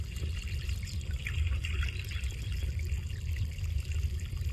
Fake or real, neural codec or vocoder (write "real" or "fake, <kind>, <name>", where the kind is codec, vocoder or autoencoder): fake, vocoder, BigVGAN v2